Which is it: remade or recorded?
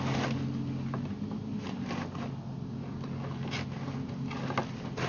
recorded